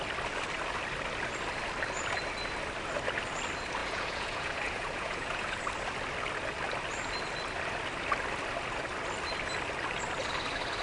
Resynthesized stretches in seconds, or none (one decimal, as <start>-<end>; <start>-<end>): 3.8-5.6